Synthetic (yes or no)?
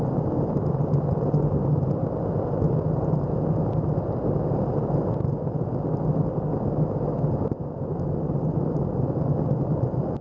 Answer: no